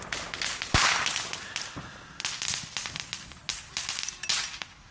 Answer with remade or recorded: recorded